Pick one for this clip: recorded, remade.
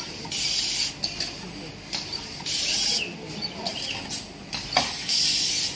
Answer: recorded